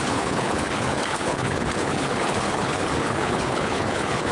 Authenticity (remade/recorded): remade